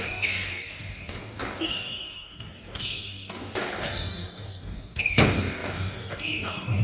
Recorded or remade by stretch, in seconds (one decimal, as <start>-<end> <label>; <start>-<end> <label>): 0.0-6.8 remade